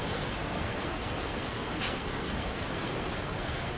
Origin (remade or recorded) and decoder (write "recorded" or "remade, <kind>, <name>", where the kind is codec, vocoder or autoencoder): remade, codec, SNAC